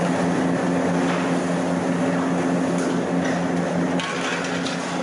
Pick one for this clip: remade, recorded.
recorded